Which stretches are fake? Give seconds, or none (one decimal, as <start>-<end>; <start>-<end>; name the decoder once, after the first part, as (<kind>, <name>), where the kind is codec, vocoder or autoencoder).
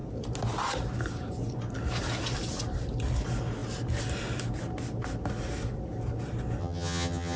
6.6-7.4 (vocoder, HiFi-GAN)